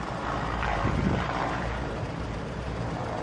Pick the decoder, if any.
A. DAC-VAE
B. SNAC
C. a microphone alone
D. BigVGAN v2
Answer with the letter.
D